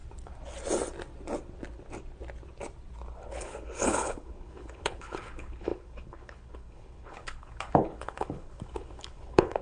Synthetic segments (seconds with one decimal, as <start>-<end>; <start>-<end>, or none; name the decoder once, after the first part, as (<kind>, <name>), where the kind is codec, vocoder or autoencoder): 3.1-9.6 (codec, HILCodec)